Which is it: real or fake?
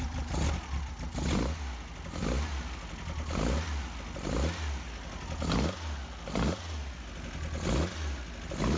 real